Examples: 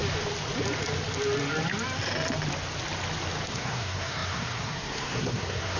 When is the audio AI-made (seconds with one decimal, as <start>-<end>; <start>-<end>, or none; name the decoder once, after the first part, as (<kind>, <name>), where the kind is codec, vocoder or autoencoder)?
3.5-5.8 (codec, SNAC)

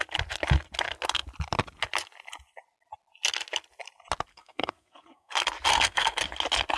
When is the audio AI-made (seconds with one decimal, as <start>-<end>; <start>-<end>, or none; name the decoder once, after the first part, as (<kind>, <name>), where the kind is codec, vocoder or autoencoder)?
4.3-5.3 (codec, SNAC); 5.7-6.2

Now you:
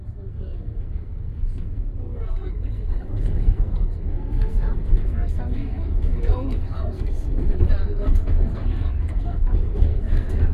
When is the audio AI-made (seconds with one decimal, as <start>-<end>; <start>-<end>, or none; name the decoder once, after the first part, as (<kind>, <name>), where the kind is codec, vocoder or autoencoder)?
0.0-10.5 (codec, SNAC)

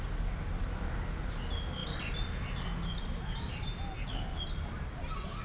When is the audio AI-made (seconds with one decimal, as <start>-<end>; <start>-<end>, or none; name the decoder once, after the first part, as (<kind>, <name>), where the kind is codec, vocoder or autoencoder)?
none